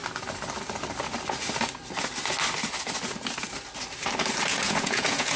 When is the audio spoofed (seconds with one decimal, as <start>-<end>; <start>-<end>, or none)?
4.5-5.4